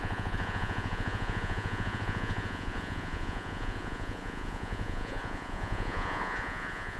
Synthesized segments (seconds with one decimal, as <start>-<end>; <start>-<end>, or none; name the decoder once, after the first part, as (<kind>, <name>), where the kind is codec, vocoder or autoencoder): 0.0-7.0 (vocoder, Vocos)